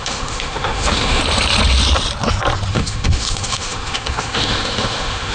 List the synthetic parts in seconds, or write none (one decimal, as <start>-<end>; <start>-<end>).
0.0-1.2; 2.7-5.3